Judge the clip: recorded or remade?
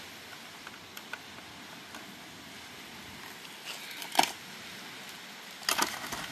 recorded